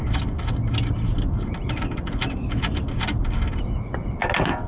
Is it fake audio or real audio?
real